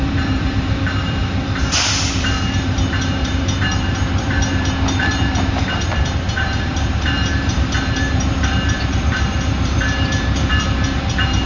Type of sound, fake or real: fake